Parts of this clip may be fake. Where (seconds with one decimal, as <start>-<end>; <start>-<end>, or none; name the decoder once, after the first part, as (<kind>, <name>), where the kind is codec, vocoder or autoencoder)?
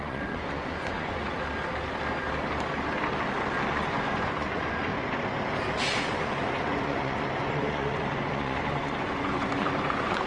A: 0.0-1.3 (vocoder, Vocos); 3.7-4.9; 6.1-10.3